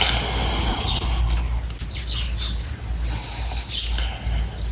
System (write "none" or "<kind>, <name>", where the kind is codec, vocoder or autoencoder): none